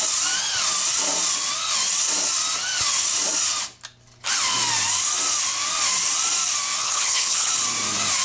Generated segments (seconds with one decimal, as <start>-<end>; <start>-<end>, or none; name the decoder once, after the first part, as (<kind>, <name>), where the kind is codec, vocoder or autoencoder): 6.8-7.5 (codec, HILCodec)